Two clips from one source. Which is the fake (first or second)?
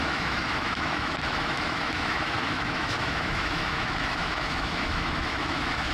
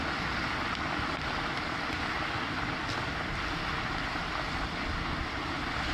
first